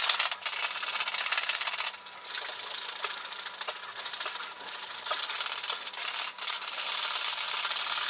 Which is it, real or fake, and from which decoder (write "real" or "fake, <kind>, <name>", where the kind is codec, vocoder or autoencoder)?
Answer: real